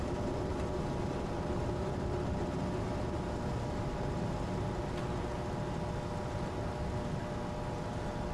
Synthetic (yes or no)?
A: no